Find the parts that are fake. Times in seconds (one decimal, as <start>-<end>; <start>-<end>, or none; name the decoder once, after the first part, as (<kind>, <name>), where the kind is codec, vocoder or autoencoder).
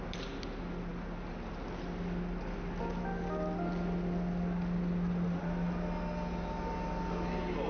none